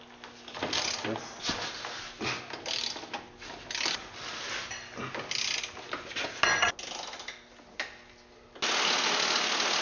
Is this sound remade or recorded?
recorded